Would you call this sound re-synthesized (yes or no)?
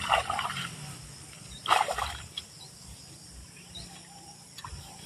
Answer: no